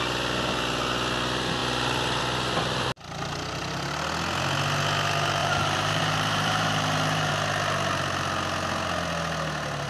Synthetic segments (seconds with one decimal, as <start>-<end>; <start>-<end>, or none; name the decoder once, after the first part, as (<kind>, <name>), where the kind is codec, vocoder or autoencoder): 5.4-7.3 (vocoder, BigVGAN v2)